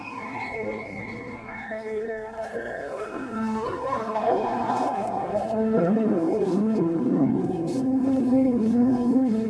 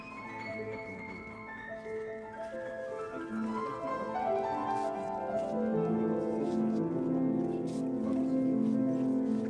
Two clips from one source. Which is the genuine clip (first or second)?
second